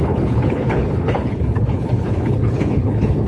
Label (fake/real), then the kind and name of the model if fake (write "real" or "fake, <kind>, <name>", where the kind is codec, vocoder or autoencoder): fake, codec, HILCodec